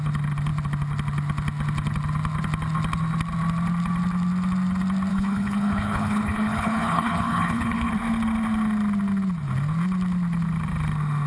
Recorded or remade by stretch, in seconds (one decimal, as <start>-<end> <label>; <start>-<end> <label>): 0.0-5.1 recorded; 5.1-7.9 remade; 7.9-11.3 recorded